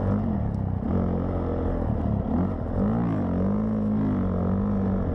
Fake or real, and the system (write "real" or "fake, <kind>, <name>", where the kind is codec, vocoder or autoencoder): real